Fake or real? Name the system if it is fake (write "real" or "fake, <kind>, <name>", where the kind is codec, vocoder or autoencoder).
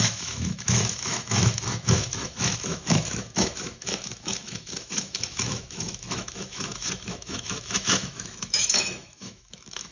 fake, autoencoder, DAC-VAE